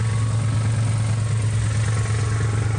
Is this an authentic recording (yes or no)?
yes